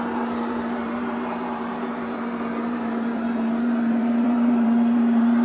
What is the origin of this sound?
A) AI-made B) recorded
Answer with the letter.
A